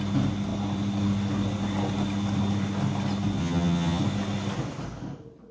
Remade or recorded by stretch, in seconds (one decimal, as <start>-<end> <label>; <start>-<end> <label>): 0.0-3.4 recorded; 3.4-4.0 remade; 4.0-5.5 recorded